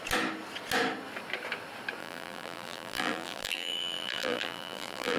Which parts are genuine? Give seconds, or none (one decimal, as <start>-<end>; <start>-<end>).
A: 0.0-2.0